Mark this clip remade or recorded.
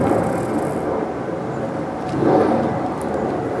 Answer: remade